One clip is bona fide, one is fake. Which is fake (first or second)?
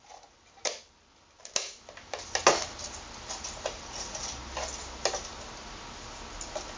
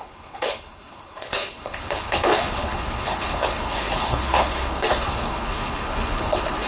second